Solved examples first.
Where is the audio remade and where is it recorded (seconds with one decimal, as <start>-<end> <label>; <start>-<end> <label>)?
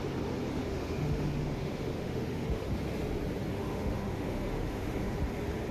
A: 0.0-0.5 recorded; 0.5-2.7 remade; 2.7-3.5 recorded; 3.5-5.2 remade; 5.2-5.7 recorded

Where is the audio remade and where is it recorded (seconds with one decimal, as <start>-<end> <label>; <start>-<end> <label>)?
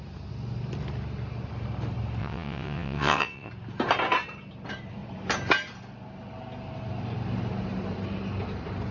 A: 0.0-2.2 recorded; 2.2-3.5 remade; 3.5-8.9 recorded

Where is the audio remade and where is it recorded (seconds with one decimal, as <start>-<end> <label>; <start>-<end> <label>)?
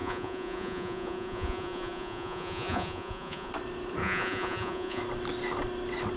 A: 0.0-3.5 remade; 3.5-4.0 recorded; 4.0-5.0 remade; 5.0-6.2 recorded